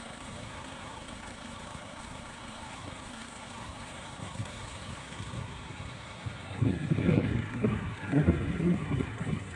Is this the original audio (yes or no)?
no